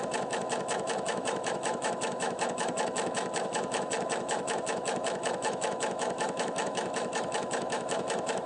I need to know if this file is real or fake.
fake